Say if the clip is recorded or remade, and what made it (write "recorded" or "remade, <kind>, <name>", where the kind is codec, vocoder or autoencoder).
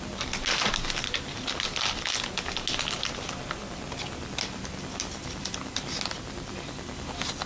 recorded